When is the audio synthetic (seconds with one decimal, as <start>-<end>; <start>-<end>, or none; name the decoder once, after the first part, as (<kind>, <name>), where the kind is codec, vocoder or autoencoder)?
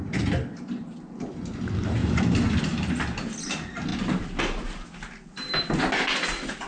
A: none